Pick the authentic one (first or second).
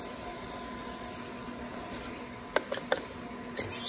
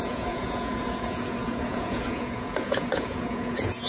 first